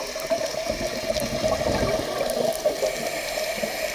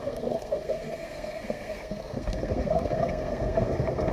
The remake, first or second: second